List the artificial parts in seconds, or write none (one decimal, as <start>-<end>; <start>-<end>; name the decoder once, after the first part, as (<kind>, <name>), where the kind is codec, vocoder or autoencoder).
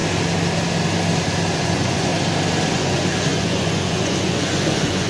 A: 1.6-2.1 (vocoder, Vocos); 2.7-5.1